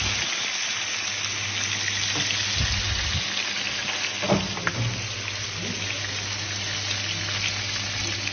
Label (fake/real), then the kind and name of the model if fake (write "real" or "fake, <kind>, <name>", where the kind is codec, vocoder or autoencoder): real